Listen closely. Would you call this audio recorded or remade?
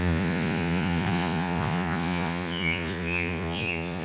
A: remade